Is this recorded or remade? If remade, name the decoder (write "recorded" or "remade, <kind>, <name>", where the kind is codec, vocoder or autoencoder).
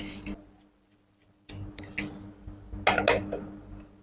recorded